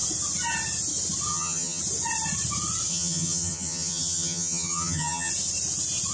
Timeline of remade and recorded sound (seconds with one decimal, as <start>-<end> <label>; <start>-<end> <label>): 0.0-1.3 recorded; 1.3-1.8 remade; 1.8-2.9 recorded; 2.9-5.3 remade; 5.3-6.1 recorded